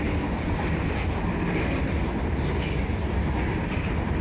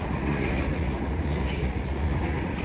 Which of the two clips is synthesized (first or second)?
second